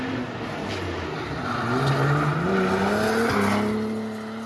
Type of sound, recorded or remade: recorded